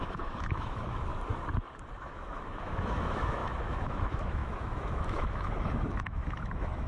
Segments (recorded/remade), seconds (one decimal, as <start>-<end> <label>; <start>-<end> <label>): 0.0-1.1 remade; 1.1-2.0 recorded; 2.0-6.9 remade